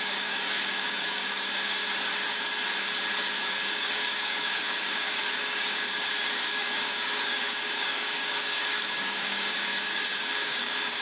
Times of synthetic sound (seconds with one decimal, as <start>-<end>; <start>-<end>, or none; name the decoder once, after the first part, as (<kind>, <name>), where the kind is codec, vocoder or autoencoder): 0.0-1.8 (codec, DAC); 3.2-11.0

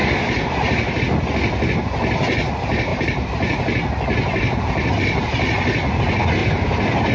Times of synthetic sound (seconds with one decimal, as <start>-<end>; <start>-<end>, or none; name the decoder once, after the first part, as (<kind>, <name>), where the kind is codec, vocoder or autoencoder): 0.0-1.0 (vocoder, BigVGAN v2); 2.9-4.9; 6.4-7.1

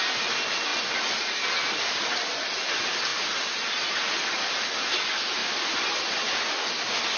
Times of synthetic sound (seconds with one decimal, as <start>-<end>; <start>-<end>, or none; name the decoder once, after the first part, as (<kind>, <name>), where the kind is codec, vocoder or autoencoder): none

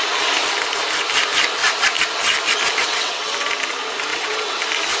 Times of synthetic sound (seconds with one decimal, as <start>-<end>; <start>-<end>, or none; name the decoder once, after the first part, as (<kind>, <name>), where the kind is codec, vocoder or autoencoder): 2.8-3.3 (vocoder, WaveNeXt); 4.1-4.6

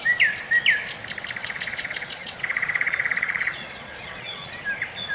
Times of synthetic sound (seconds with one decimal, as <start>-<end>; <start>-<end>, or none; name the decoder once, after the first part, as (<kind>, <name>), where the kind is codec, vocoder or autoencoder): 1.4-4.5 (vocoder, Vocos)